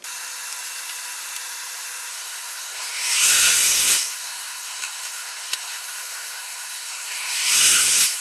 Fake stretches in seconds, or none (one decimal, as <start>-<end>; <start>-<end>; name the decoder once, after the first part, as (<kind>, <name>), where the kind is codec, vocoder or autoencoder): 2.1-8.2 (codec, SNAC)